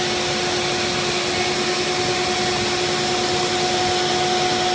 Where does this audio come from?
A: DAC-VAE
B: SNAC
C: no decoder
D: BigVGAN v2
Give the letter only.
C